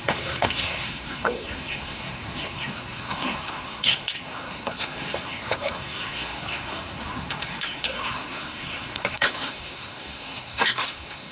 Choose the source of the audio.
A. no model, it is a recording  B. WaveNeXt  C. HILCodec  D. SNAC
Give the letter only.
D